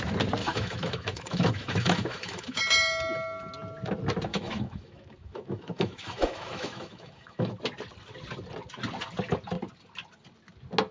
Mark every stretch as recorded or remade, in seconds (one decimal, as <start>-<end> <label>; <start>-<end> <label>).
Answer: 0.0-0.4 recorded; 0.4-2.6 remade; 2.6-4.3 recorded; 4.3-7.5 remade; 7.5-10.9 recorded